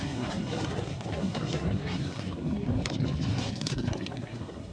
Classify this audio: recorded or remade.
remade